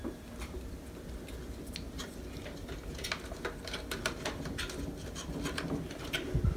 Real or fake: real